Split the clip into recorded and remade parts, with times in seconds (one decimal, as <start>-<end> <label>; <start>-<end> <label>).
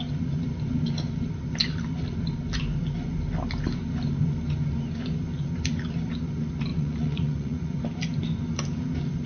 0.0-6.7 recorded; 6.7-7.8 remade; 7.8-9.3 recorded